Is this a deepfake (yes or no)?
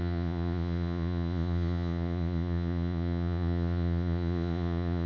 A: yes